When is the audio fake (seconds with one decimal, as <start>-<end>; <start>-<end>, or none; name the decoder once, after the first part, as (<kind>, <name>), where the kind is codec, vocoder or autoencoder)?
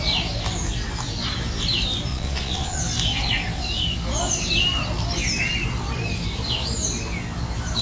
2.1-2.8 (vocoder, Vocos)